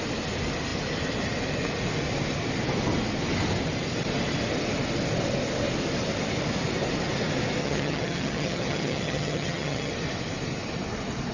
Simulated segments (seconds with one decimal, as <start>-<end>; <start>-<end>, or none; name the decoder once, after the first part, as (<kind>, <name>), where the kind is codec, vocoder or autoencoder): 7.6-9.9 (vocoder, HiFi-GAN)